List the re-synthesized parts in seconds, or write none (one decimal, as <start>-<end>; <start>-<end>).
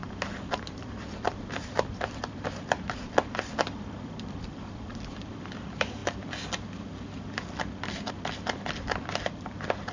0.0-6.0; 8.1-9.9